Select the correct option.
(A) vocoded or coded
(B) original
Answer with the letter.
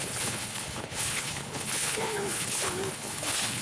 A